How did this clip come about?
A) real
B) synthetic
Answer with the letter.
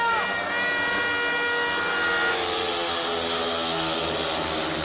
A